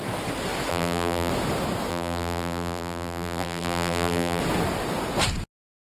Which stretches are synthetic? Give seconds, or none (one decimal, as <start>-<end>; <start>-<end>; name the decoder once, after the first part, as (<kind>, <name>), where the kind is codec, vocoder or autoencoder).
0.7-1.3 (vocoder, BigVGAN v2); 1.9-4.4